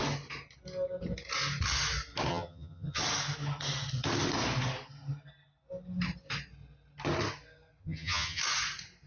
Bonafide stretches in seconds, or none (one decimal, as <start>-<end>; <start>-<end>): 0.0-2.3; 3.0-7.8; 8.4-9.1